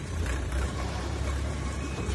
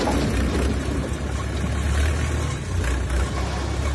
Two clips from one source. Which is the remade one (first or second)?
first